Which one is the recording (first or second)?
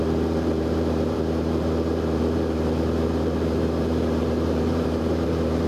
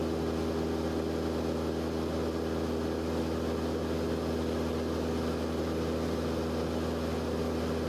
second